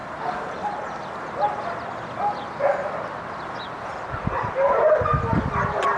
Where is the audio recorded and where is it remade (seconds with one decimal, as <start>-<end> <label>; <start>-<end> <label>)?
0.0-6.0 recorded